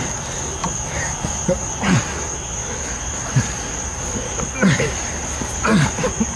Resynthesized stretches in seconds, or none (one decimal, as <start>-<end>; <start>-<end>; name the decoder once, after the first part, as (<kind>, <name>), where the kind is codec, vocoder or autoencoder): none